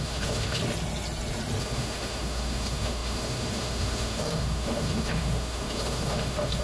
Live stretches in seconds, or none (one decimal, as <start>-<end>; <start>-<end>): 0.6-1.6